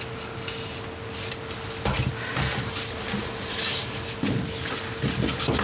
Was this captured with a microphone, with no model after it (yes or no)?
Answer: yes